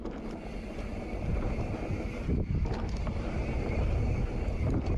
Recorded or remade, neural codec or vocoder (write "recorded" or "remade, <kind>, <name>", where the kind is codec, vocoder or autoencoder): recorded